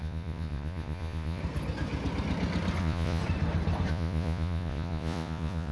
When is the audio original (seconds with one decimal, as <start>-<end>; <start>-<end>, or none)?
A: 1.4-2.8; 3.2-3.9

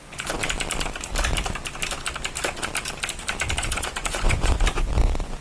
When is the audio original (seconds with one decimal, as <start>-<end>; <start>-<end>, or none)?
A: 0.4-3.6

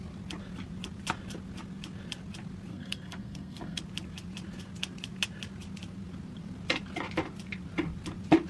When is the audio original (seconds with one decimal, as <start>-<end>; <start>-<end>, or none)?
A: 0.0-2.7; 3.8-8.5

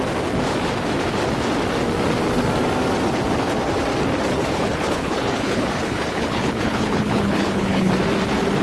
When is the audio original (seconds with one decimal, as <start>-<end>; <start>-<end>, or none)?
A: 0.0-4.3; 7.9-8.6

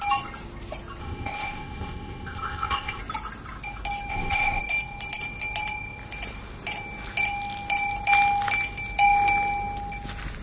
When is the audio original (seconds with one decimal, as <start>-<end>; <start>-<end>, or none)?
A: 0.0-1.0; 3.0-4.1; 4.6-10.4